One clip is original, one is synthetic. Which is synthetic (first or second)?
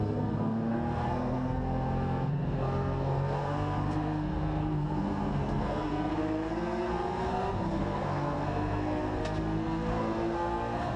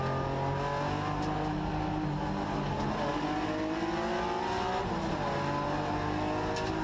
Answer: first